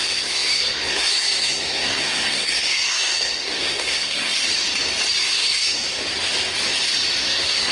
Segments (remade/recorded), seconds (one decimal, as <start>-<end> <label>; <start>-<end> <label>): 0.0-4.4 remade; 4.4-5.2 recorded; 5.2-6.0 remade; 6.0-7.2 recorded; 7.2-7.7 remade